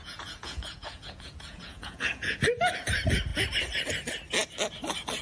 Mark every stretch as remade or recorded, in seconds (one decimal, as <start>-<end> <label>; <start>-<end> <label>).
0.0-2.4 remade; 2.4-5.2 recorded

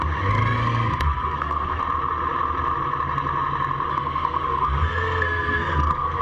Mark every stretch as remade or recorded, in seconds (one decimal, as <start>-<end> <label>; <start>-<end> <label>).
0.0-1.8 remade; 1.8-3.9 recorded; 3.9-6.2 remade

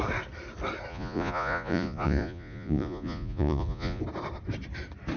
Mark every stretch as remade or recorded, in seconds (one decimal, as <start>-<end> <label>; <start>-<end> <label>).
0.0-0.9 recorded; 0.9-4.0 remade; 4.0-5.2 recorded

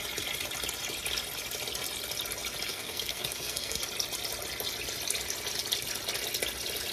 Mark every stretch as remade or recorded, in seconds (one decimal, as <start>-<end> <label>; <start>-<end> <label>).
0.0-2.7 recorded; 2.7-3.8 remade; 3.8-6.9 recorded

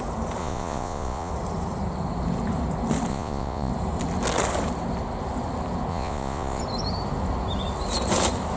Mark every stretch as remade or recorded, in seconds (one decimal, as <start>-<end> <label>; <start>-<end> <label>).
0.0-0.4 recorded; 0.4-1.3 remade; 1.3-3.1 recorded; 3.1-3.7 remade; 3.7-5.9 recorded; 5.9-6.6 remade; 6.6-8.6 recorded

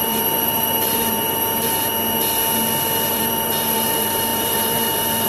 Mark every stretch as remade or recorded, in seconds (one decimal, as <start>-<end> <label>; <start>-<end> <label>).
0.0-1.9 remade; 1.9-3.1 recorded; 3.1-5.3 remade